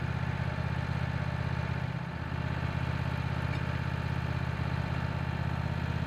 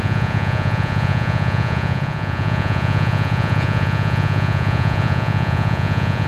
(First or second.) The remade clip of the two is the second